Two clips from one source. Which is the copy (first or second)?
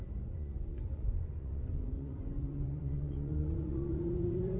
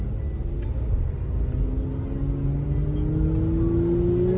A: first